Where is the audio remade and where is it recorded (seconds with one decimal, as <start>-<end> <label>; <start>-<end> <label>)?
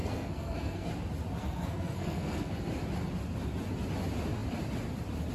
0.0-0.9 remade; 0.9-1.4 recorded; 1.4-2.6 remade; 2.6-5.3 recorded